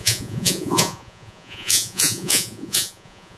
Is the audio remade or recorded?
remade